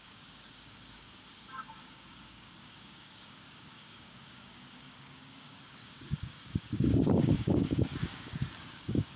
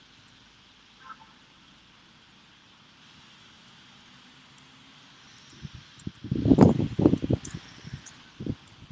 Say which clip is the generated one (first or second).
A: first